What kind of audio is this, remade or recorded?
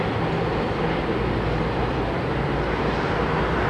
recorded